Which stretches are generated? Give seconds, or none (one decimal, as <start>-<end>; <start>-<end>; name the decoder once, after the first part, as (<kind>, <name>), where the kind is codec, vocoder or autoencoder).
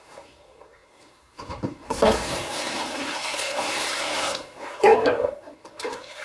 0.0-6.2 (codec, SNAC)